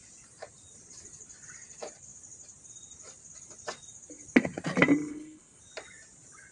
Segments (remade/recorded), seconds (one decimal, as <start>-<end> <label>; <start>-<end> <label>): 0.0-5.1 recorded; 5.1-5.6 remade; 5.6-6.5 recorded